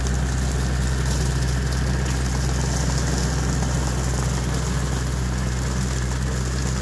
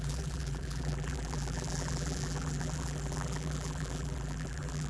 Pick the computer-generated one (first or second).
second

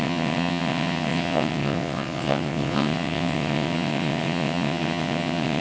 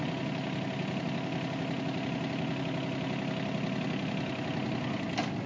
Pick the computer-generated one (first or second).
first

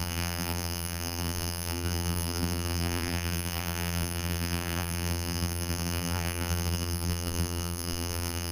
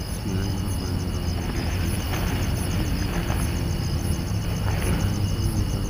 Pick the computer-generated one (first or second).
first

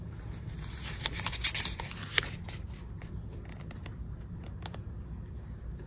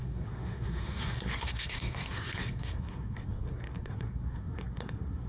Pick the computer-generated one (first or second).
second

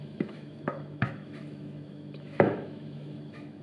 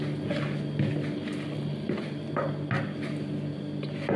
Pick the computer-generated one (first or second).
first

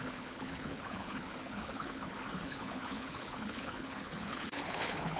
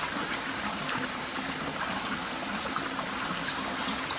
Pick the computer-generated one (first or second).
first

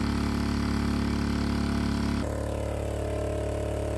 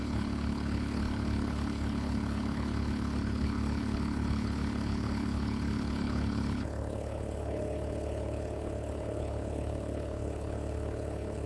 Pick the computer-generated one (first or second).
second